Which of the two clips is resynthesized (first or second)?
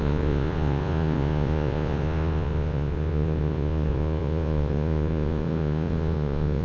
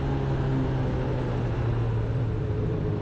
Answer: first